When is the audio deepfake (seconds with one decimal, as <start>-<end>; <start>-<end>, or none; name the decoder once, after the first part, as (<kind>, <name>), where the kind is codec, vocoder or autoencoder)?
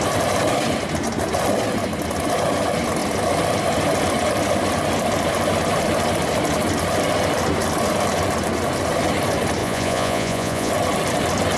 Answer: 9.6-10.7 (vocoder, Vocos)